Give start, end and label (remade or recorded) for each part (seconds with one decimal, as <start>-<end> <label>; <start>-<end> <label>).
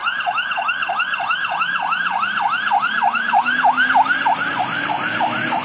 0.0-5.6 recorded